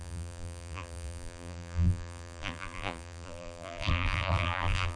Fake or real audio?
fake